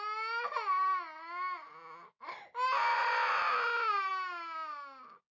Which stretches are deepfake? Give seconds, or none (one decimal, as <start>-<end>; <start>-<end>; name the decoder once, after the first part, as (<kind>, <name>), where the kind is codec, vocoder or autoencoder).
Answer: none